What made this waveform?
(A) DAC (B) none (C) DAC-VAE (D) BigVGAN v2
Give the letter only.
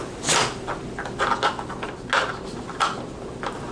B